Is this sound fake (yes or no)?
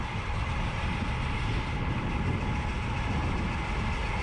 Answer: no